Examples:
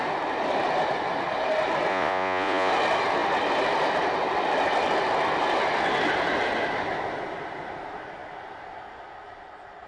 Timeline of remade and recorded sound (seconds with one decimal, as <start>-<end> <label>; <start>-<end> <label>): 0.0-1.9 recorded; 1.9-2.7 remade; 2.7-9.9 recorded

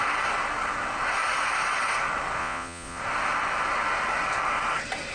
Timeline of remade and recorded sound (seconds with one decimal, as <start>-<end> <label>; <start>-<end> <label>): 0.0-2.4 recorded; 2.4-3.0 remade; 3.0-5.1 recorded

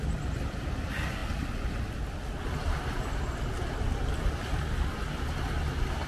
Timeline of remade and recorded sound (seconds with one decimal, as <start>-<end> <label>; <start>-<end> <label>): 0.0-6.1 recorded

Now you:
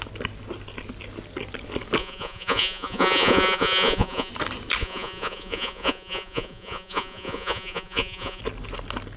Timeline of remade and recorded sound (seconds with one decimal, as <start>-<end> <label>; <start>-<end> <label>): 0.0-2.0 recorded; 2.0-4.3 remade; 4.3-4.8 recorded; 4.8-8.4 remade; 8.4-9.2 recorded

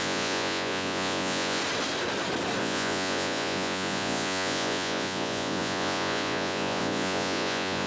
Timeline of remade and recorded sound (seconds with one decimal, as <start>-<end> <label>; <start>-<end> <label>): 0.0-1.6 remade; 1.6-2.6 recorded; 2.6-7.9 remade

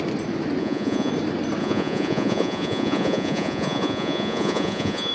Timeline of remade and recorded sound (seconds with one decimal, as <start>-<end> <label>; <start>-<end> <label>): 0.0-0.6 recorded; 0.6-1.1 remade; 1.1-1.6 recorded; 1.6-5.1 remade

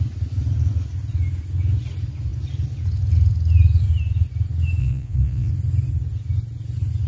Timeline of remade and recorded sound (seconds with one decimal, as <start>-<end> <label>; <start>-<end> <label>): 0.0-4.8 recorded; 4.8-5.5 remade; 5.5-7.1 recorded